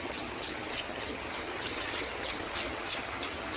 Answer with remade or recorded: remade